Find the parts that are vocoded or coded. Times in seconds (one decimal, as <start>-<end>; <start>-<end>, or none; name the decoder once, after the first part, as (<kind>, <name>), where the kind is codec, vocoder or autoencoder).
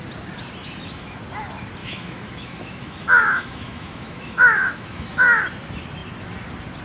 0.6-1.2 (autoencoder, DAC-VAE); 1.8-5.4